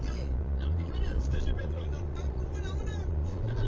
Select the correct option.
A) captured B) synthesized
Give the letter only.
B